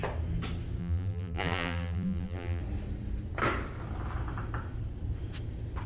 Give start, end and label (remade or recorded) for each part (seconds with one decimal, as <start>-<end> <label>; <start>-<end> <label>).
0.0-0.8 recorded; 0.8-2.6 remade; 2.6-5.9 recorded